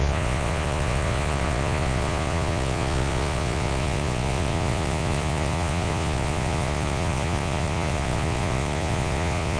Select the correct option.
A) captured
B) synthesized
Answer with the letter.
B